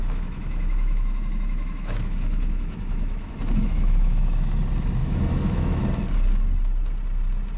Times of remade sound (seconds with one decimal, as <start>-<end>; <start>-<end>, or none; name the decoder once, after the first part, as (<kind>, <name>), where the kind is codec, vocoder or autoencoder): 0.0-4.6 (autoencoder, DAC-VAE); 5.0-5.8